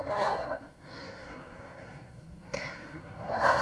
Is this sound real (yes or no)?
no